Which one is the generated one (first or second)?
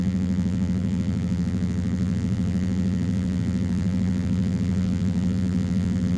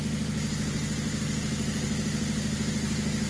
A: first